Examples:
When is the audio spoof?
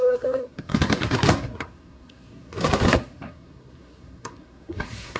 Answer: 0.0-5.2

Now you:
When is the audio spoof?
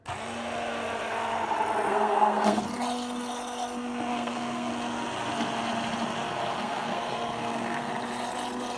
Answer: 1.9-2.6; 4.1-4.7; 6.6-7.9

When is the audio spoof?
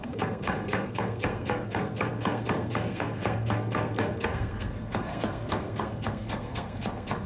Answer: 0.0-7.3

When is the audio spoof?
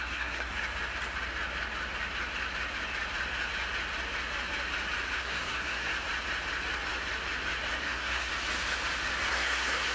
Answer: 0.0-0.5; 5.2-5.9; 7.8-8.3; 9.3-9.9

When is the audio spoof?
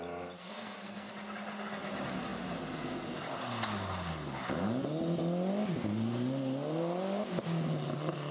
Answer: 0.4-1.1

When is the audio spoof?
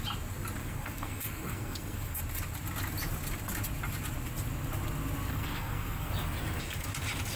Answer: 0.6-2.2; 5.3-6.1